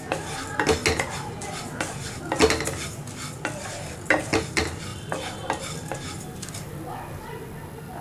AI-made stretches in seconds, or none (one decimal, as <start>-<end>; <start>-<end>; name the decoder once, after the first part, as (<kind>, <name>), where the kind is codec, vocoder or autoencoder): none